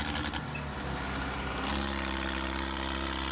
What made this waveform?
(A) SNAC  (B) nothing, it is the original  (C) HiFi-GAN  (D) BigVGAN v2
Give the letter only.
B